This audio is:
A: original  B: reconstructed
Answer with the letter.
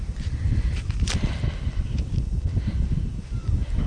A